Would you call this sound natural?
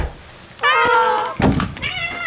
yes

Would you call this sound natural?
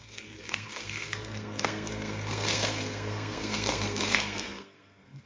no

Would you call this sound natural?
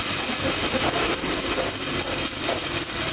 yes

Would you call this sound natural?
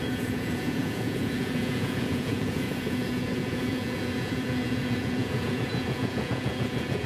no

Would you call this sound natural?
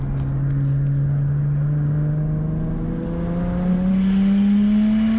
yes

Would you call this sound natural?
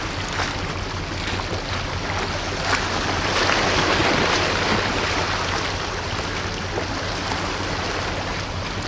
yes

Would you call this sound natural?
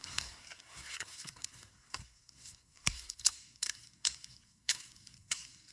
no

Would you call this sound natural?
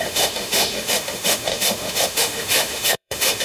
no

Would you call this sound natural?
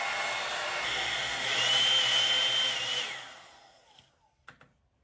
yes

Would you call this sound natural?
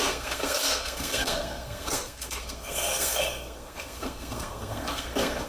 no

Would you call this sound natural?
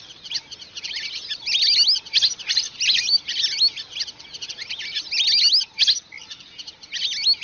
yes